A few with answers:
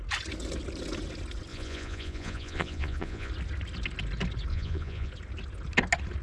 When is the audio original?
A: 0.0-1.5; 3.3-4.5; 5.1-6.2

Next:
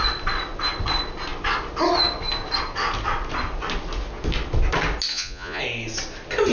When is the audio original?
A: 0.0-5.1; 5.6-6.5

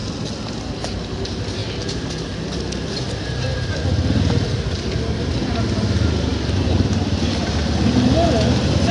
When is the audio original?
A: 0.0-8.9